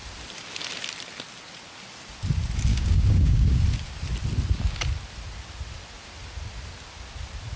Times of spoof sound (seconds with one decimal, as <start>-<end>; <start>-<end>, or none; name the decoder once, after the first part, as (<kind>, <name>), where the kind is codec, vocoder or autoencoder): 2.7-3.6 (codec, DAC)